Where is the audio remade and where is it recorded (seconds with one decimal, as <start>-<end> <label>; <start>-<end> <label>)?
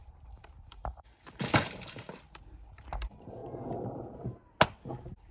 0.0-2.2 remade; 2.2-5.3 recorded